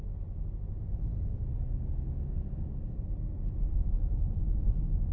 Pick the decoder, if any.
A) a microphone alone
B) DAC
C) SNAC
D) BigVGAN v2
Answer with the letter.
A